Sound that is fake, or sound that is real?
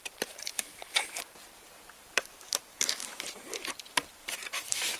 fake